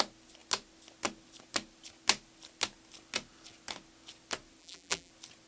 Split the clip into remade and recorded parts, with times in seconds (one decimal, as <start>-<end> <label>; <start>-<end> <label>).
0.0-4.6 recorded; 4.6-5.1 remade; 5.1-5.5 recorded

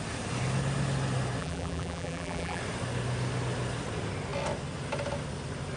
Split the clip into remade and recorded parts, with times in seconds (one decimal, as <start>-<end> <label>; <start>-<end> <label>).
0.0-1.4 recorded; 1.4-2.6 remade; 2.6-5.8 recorded